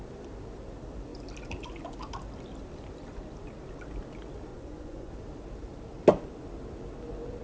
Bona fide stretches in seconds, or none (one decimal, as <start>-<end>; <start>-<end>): 0.0-4.5; 5.1-7.4